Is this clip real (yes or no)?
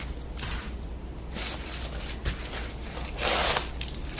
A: yes